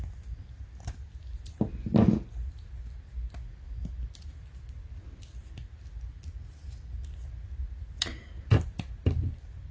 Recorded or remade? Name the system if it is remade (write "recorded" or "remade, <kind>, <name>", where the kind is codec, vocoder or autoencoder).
recorded